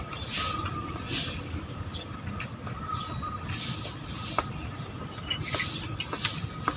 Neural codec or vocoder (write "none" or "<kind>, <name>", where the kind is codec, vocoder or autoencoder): none